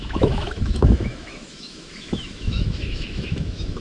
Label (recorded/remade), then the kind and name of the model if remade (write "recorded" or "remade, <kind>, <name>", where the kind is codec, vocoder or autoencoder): remade, autoencoder, DAC-VAE